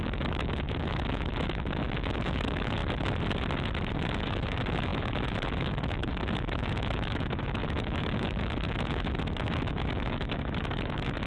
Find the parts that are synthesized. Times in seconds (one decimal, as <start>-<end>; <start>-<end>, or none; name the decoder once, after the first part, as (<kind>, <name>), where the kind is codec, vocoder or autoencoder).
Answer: 0.0-2.8 (autoencoder, DAC-VAE); 3.9-11.3